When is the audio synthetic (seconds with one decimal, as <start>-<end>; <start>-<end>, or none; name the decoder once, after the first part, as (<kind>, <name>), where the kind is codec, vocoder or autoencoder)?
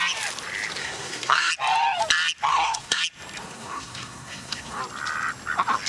0.8-1.5 (codec, SNAC); 2.5-3.0; 3.4-4.8